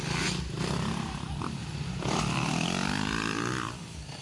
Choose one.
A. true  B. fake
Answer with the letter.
B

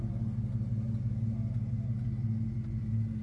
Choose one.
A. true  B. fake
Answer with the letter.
A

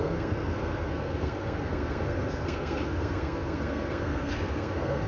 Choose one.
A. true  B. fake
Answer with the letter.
B